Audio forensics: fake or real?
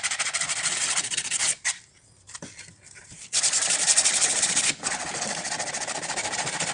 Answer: fake